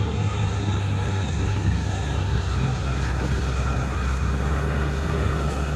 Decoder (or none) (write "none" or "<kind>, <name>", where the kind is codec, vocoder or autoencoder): codec, SNAC